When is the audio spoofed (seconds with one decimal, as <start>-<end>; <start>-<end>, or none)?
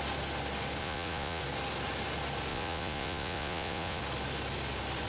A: 0.8-1.4; 2.5-4.0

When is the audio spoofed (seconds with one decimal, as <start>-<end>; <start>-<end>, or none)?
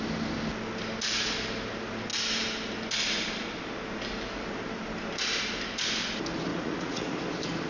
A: 6.5-7.2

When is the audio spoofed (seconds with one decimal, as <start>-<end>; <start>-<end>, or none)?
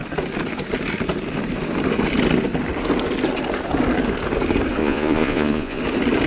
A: 4.8-5.8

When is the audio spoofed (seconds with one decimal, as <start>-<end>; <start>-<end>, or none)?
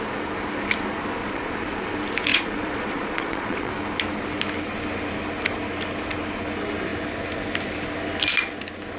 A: 1.2-1.8; 2.3-3.7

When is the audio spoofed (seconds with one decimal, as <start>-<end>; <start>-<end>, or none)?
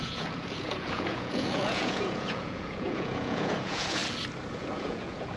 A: 0.0-4.0; 4.5-5.4